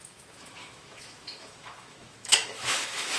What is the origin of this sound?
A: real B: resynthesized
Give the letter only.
B